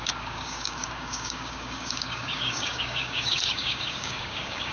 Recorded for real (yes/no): no